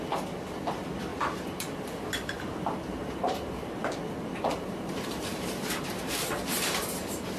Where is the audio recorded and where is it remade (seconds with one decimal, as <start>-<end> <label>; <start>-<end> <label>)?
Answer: 0.0-1.1 recorded; 1.1-3.8 remade; 3.8-4.5 recorded; 4.5-7.4 remade